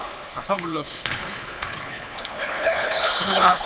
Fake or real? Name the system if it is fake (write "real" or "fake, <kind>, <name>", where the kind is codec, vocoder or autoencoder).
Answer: fake, codec, HILCodec